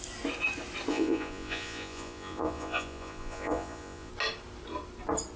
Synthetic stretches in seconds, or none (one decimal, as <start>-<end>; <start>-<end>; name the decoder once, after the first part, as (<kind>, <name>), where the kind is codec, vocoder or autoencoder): 0.9-4.1 (vocoder, Vocos)